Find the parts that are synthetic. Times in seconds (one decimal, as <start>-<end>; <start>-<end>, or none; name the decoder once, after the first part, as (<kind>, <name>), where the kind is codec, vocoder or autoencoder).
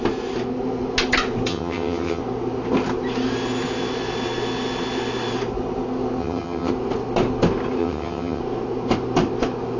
1.5-2.2 (vocoder, HiFi-GAN); 6.2-6.7; 7.8-8.4